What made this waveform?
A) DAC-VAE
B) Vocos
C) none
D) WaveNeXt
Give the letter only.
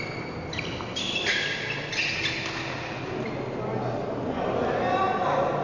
C